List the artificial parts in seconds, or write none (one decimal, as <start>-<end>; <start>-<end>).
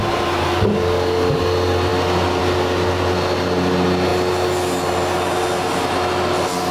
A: 0.4-1.4